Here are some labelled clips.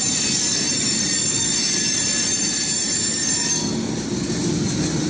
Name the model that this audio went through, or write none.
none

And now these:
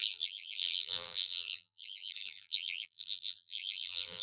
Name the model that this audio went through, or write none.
vocoder, BigVGAN v2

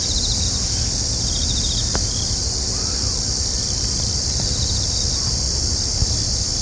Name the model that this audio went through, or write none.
none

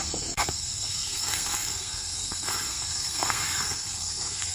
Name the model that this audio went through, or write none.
codec, SNAC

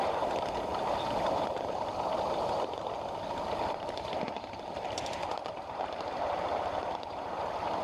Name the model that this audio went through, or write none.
vocoder, BigVGAN v2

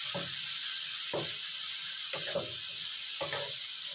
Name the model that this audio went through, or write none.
none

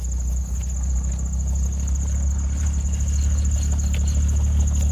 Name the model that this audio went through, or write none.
none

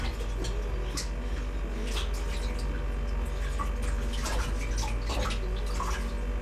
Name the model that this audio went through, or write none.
none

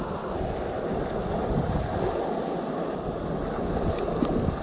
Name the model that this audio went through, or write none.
none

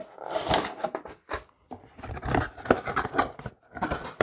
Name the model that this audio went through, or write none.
none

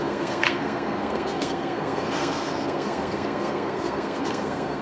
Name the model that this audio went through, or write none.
codec, SNAC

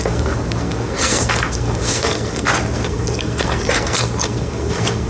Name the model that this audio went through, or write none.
codec, SNAC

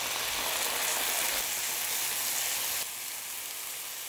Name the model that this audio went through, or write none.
none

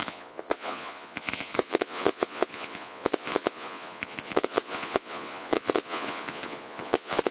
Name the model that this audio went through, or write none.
vocoder, Vocos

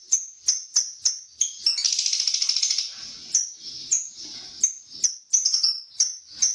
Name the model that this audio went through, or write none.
none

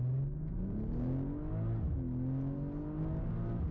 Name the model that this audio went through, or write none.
none